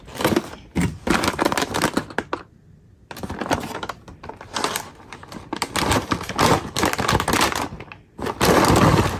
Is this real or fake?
real